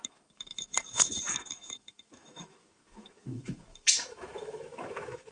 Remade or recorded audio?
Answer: remade